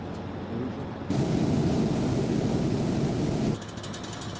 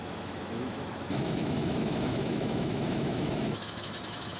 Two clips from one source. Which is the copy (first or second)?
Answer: second